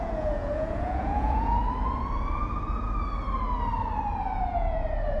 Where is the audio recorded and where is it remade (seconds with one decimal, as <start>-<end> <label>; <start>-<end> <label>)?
0.0-1.6 remade; 1.6-4.2 recorded; 4.2-5.2 remade